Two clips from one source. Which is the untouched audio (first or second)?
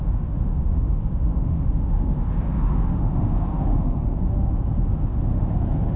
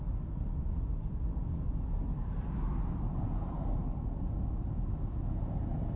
second